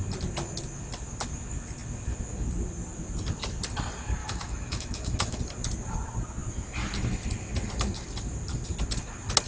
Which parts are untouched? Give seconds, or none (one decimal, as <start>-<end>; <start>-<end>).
0.0-4.2; 5.4-9.5